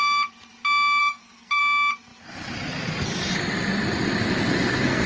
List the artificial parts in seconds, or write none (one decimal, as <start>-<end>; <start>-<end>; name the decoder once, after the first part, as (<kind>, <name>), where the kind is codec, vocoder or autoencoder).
1.0-1.6 (codec, SNAC); 4.5-5.1